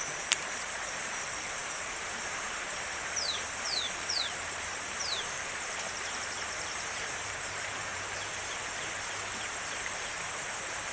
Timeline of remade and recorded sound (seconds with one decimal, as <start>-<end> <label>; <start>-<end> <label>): 0.0-10.9 remade

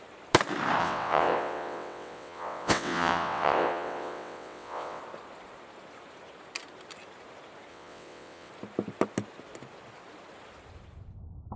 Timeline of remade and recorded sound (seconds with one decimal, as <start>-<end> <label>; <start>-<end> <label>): 0.0-0.8 recorded; 0.8-5.0 remade; 5.0-7.7 recorded; 7.7-8.5 remade; 8.5-11.6 recorded